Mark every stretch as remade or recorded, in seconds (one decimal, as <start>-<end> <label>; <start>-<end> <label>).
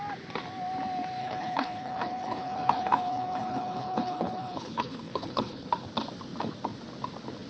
0.0-1.2 recorded; 1.2-5.7 remade; 5.7-7.5 recorded